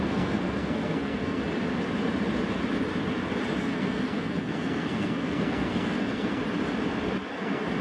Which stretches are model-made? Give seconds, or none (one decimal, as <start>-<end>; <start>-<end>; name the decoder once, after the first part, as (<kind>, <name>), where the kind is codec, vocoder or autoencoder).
0.0-1.4 (codec, SNAC); 3.6-6.4; 7.3-7.8